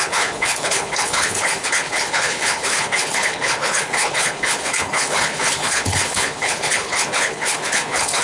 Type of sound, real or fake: fake